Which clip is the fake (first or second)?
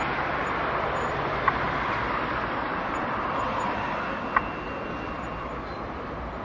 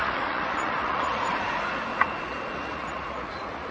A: second